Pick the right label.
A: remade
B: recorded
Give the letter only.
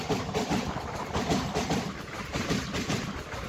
B